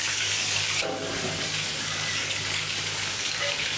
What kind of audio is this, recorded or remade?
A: remade